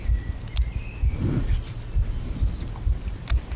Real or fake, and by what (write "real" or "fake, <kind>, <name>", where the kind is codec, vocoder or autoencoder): real